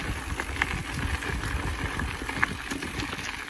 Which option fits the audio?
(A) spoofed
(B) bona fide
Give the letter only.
B